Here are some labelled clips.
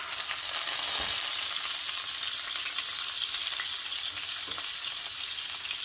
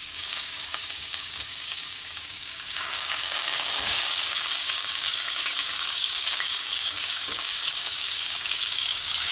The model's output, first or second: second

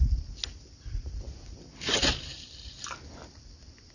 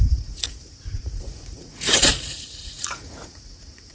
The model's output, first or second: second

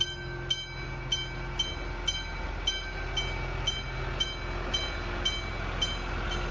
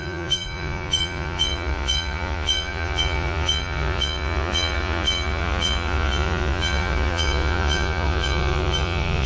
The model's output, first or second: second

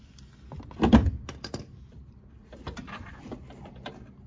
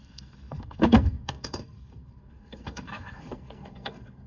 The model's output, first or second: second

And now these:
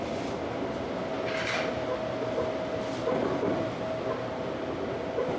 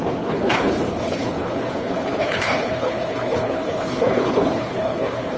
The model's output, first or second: second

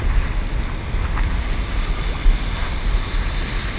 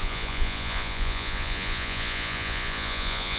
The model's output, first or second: second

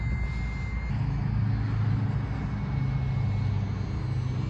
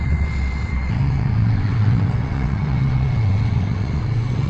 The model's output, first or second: second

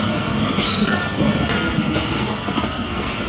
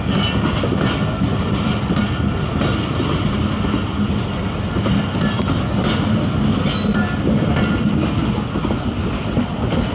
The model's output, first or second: first